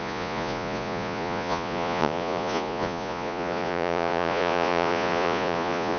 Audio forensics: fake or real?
fake